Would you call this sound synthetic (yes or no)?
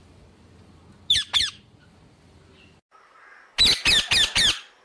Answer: no